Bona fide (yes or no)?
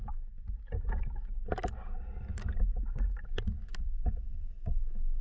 yes